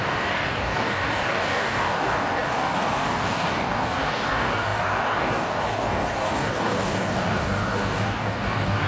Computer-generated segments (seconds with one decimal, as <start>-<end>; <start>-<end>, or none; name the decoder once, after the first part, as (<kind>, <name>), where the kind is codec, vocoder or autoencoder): 0.0-8.9 (codec, DAC)

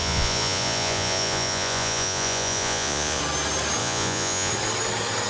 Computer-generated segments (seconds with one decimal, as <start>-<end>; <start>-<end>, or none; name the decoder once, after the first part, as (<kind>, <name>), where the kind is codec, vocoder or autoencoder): 0.0-3.2 (vocoder, Vocos); 3.8-4.5

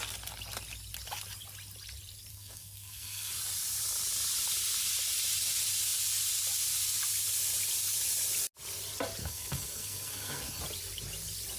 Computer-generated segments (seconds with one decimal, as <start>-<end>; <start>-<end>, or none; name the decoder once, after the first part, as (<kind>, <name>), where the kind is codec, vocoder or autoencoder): 2.3-3.3 (codec, SNAC); 9.2-10.6

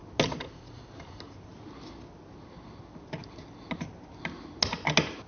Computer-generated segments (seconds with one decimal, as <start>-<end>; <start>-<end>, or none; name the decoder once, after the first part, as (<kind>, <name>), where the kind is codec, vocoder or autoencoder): none

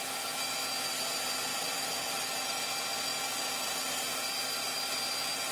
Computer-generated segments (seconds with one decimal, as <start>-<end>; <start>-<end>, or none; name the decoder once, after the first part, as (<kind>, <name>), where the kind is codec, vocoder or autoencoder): 1.5-2.4 (vocoder, BigVGAN v2)

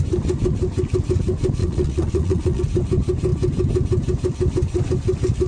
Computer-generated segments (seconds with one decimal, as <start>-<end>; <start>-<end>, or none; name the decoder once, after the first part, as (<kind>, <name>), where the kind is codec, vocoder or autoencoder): 1.6-2.6 (vocoder, Vocos)

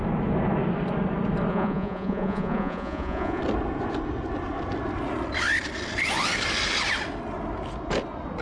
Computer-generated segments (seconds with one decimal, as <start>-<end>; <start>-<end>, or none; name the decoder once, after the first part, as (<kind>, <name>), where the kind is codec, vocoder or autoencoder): 1.5-3.4 (vocoder, Vocos)

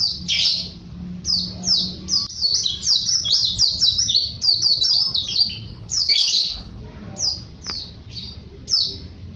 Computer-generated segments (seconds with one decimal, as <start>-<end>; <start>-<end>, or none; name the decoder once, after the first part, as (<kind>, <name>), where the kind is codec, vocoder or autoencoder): 5.7-6.8 (codec, HILCodec)